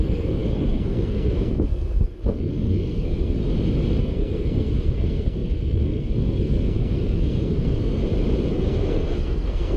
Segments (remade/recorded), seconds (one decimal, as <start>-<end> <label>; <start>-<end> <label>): 0.0-3.4 remade; 3.4-4.0 recorded; 4.0-8.0 remade; 8.0-8.5 recorded; 8.5-9.8 remade